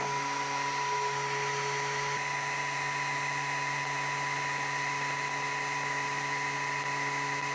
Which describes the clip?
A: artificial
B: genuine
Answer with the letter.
B